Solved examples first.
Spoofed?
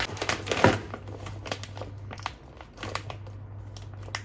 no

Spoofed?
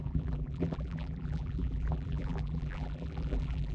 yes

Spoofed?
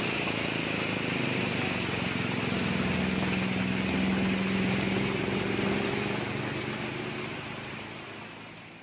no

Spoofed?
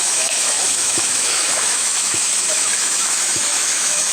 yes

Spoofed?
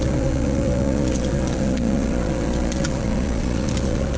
yes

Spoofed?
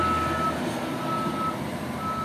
no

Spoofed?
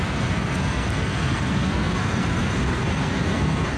yes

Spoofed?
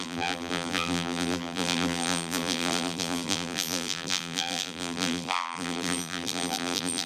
yes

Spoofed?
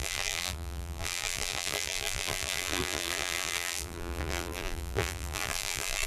yes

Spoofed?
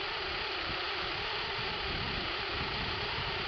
no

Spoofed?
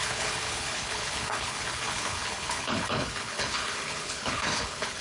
yes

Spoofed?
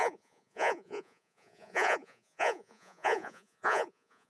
yes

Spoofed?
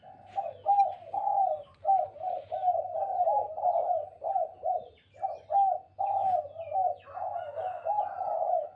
no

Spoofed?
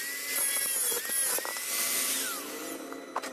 no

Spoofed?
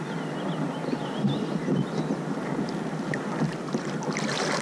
no